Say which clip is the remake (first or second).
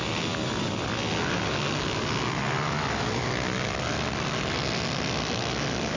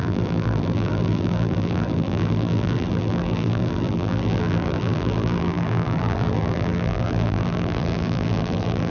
second